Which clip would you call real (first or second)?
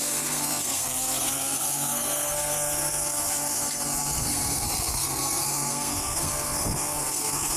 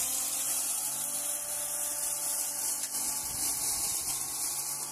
second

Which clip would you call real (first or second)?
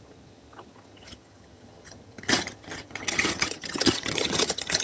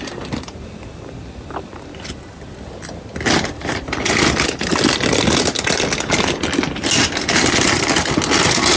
second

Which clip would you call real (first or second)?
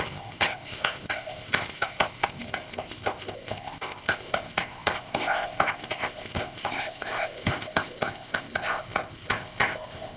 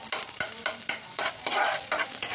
second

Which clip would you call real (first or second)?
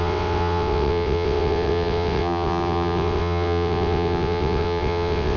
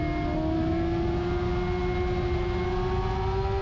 second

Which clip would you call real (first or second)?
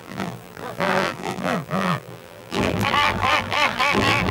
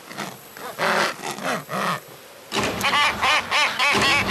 second